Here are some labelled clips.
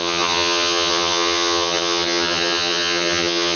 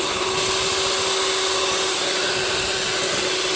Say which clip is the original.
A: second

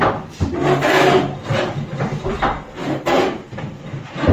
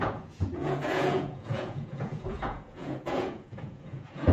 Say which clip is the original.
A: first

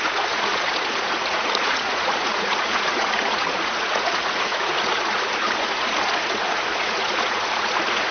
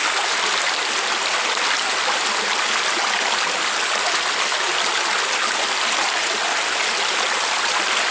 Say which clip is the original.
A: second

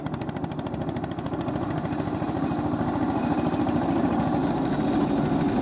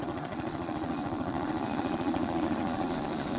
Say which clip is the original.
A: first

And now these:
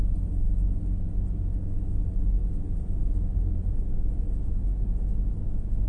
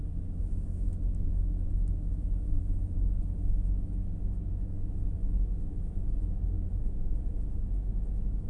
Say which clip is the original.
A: first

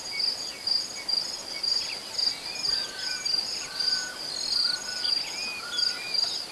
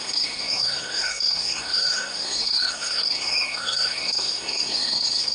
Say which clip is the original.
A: first